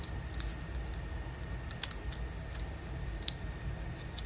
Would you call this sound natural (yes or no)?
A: yes